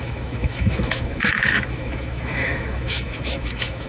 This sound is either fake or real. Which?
fake